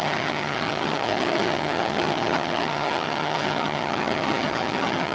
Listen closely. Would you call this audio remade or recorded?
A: remade